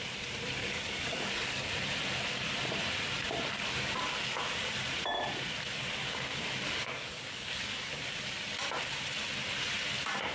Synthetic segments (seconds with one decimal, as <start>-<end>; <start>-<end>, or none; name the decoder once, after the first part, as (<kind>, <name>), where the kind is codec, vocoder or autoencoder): 0.6-1.7 (codec, DAC); 6.0-8.0